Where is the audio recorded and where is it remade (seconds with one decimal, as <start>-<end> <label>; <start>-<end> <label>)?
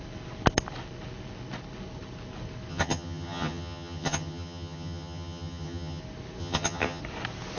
0.0-2.7 recorded; 2.7-6.0 remade; 6.0-6.4 recorded; 6.4-7.0 remade; 7.0-7.6 recorded